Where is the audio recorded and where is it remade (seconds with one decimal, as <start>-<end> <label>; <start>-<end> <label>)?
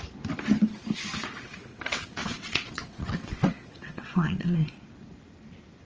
0.0-1.2 recorded; 1.2-4.7 remade; 4.7-5.8 recorded